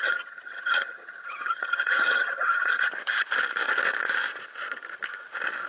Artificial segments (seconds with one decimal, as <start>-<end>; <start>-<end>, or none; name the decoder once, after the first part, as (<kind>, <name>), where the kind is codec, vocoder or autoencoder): 0.0-2.9 (vocoder, HiFi-GAN)